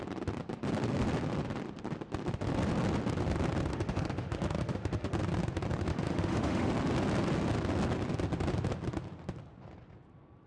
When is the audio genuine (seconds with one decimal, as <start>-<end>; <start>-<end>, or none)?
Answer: 0.0-3.7; 5.2-5.9; 6.7-10.5